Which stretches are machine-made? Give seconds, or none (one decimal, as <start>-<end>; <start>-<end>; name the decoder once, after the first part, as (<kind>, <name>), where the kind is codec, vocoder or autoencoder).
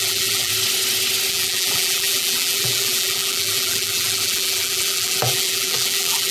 0.0-0.5 (vocoder, BigVGAN v2); 1.3-6.3